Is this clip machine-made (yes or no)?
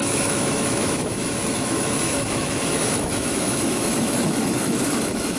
yes